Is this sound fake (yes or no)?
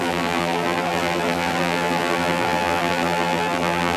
yes